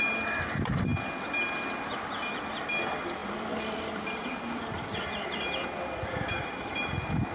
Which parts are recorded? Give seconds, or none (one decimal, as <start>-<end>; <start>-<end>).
0.0-3.2